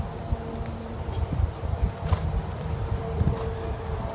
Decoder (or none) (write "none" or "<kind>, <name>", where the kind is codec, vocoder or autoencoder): none